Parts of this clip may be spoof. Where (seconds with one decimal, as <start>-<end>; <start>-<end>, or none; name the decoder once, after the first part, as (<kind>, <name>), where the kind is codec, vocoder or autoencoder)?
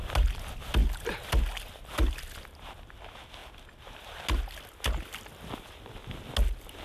none